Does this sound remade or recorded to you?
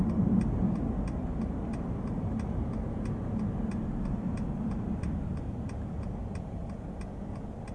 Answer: recorded